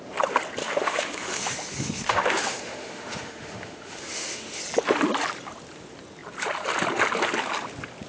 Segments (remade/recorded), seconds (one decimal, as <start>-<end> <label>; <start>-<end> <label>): 0.0-0.6 recorded; 0.6-4.6 remade; 4.6-8.1 recorded